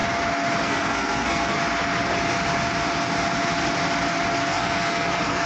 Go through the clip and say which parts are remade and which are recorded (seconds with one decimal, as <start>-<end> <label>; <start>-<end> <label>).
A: 0.0-0.6 recorded; 0.6-1.6 remade; 1.6-4.3 recorded; 4.3-5.5 remade